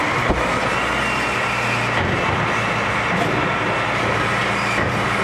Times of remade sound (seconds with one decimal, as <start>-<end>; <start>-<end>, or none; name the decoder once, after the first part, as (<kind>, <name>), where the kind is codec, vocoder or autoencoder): none